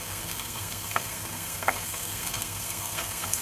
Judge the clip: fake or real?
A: fake